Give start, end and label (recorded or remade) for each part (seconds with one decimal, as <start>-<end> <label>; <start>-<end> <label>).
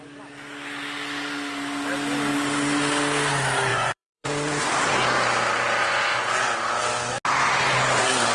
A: 0.0-3.7 recorded; 3.7-4.7 remade; 4.7-5.8 recorded; 5.8-6.6 remade; 6.6-8.3 recorded